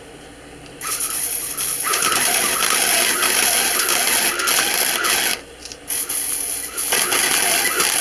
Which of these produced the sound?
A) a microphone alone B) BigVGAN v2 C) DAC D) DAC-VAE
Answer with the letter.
A